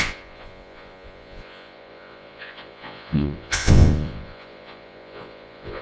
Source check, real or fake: fake